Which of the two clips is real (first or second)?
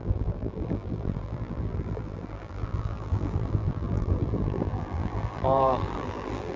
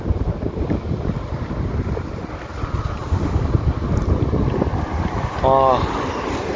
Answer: second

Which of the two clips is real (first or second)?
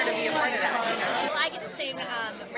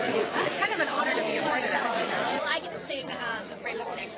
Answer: first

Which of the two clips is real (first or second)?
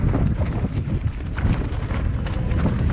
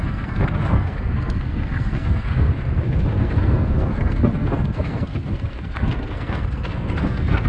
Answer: first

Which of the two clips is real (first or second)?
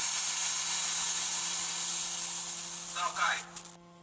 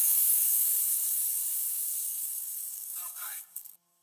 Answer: first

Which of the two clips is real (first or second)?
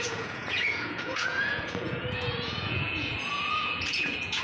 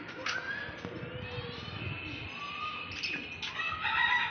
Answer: second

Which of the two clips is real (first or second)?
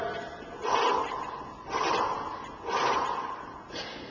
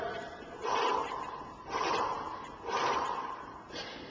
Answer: first